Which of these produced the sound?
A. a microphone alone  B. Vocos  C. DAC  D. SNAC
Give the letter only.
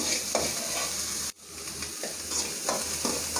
A